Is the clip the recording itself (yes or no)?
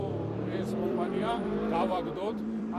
no